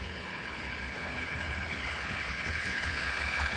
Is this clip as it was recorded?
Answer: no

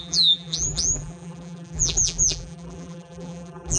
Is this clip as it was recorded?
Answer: no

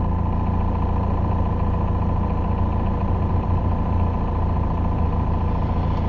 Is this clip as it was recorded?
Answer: yes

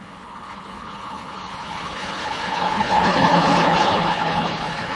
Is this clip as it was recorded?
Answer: no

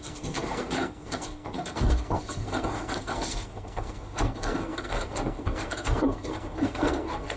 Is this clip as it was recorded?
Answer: no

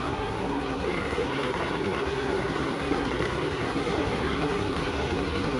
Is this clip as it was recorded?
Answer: no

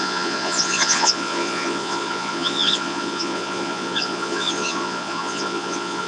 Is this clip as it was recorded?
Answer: no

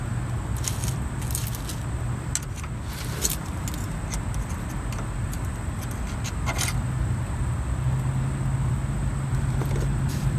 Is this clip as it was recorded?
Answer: yes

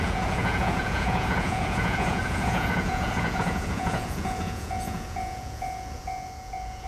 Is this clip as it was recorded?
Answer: no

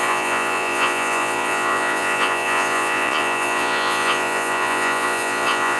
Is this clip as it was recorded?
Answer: no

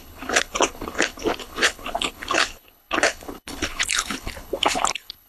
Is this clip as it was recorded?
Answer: no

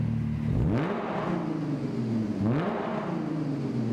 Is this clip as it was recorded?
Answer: yes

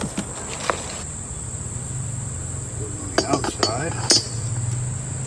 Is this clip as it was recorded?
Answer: yes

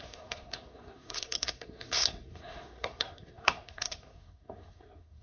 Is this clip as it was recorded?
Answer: no